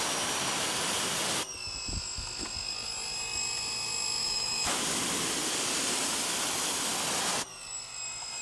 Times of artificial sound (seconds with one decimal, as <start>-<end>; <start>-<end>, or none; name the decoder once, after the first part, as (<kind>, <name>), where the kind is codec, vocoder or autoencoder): 4.2-4.8 (autoencoder, DAC-VAE)

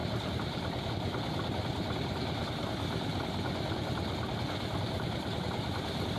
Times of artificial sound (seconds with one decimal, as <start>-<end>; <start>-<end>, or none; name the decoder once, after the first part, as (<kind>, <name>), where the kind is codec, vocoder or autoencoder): 0.0-0.9 (vocoder, BigVGAN v2)

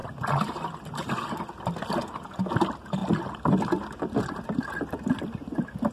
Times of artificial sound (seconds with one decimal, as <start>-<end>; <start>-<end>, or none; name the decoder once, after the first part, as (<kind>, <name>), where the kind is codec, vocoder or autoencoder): none

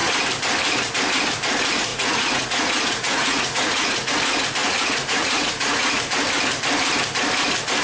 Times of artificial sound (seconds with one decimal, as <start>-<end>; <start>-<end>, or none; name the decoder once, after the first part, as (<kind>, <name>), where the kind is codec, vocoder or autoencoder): 1.9-4.1 (vocoder, Vocos); 4.6-6.0

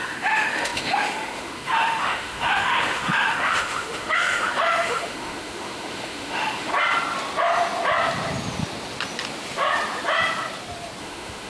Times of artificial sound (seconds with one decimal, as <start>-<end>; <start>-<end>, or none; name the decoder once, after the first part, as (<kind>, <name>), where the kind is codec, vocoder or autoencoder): 0.0-6.7 (autoencoder, DAC-VAE); 11.0-11.5